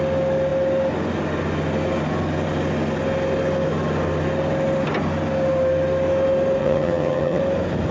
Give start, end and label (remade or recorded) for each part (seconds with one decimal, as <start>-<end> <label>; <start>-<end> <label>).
0.0-6.6 recorded; 6.6-7.4 remade; 7.4-7.9 recorded